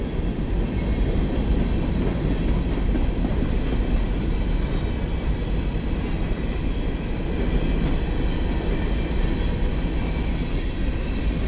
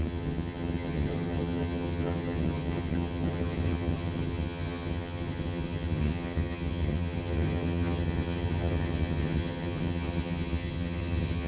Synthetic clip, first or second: second